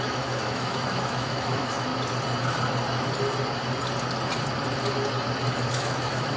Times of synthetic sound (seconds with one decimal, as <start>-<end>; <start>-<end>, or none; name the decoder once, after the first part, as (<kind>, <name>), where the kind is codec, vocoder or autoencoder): 0.0-1.9 (autoencoder, DAC-VAE); 5.7-6.4